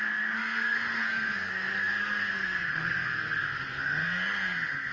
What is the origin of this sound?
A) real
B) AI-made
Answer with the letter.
B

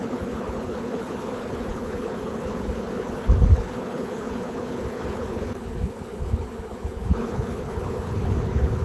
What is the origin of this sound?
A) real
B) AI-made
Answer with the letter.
B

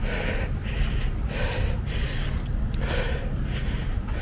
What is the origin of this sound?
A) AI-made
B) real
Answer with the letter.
B